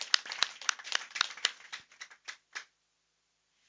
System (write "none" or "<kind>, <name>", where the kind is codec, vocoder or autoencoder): none